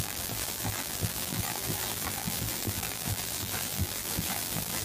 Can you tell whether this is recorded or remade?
remade